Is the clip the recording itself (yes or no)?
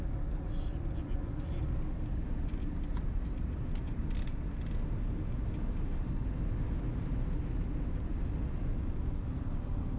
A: yes